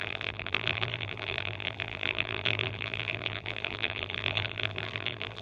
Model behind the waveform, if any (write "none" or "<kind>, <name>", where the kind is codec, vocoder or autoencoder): vocoder, BigVGAN v2